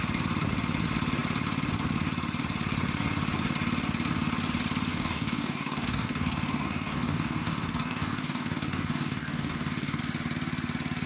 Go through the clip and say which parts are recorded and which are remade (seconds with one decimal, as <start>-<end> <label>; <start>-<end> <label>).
0.0-4.9 recorded; 4.9-10.0 remade; 10.0-11.1 recorded